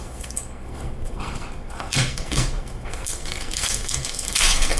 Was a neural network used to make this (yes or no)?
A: yes